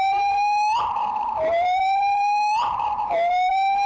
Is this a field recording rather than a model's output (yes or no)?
no